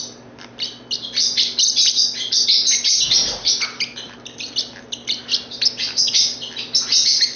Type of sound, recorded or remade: recorded